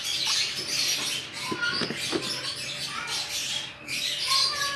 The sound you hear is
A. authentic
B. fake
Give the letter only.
A